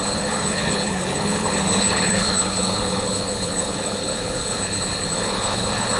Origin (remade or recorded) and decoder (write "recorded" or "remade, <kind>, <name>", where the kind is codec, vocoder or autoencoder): remade, codec, HILCodec